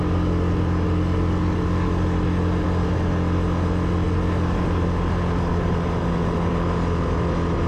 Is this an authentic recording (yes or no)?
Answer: yes